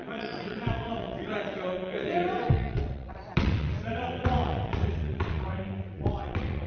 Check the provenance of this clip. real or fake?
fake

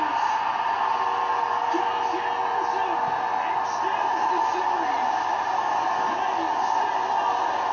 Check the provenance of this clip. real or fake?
real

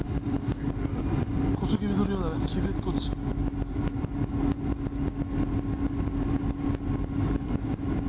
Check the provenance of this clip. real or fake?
real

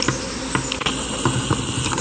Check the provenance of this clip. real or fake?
real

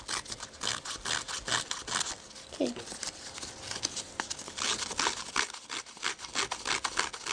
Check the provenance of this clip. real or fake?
real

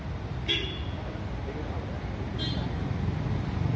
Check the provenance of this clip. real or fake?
real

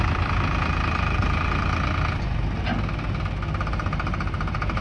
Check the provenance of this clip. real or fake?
real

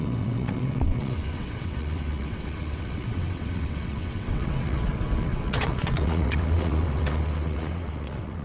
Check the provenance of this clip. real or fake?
fake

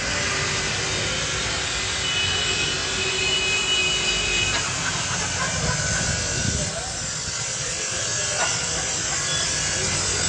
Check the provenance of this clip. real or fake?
real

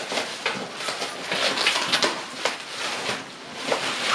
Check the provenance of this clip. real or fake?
real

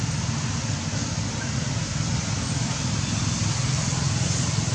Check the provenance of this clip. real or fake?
real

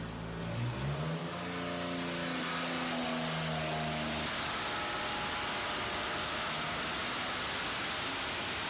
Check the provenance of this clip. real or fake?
real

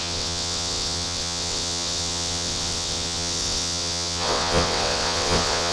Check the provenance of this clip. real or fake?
fake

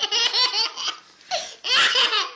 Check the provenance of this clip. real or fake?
real